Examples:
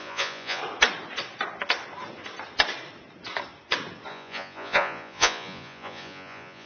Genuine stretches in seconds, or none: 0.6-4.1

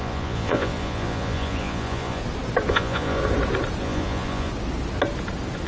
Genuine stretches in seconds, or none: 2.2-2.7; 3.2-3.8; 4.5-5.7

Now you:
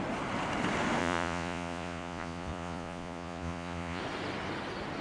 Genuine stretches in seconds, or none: 0.0-1.0; 4.0-5.0